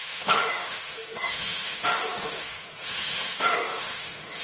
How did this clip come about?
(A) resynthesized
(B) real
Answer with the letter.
A